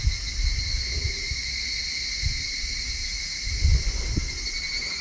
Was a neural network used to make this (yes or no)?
no